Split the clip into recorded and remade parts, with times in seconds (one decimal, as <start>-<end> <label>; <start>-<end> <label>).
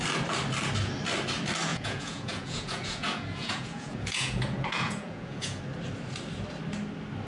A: 0.0-1.7 recorded; 1.7-5.6 remade; 5.6-7.3 recorded